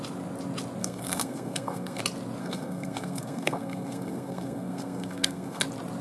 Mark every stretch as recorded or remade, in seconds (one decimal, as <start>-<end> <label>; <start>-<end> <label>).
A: 0.0-0.8 recorded; 0.8-2.0 remade; 2.0-2.4 recorded; 2.4-5.6 remade; 5.6-6.0 recorded